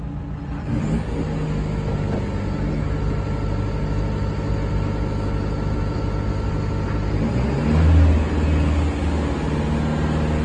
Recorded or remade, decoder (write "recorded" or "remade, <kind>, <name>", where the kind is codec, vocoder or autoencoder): recorded